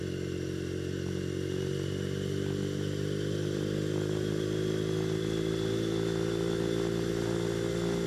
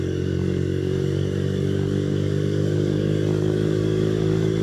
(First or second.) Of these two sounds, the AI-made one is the second